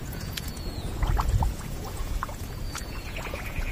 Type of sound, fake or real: fake